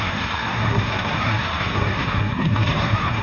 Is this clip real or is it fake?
fake